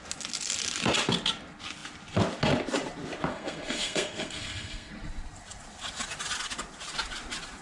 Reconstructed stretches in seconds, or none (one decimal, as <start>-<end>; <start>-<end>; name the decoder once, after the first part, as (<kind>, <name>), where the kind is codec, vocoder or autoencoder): 3.3-4.9 (codec, SNAC)